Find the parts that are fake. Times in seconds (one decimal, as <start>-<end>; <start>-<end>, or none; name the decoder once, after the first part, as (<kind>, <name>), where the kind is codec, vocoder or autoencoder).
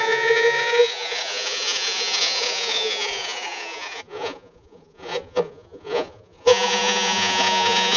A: 0.0-8.0 (vocoder, Vocos)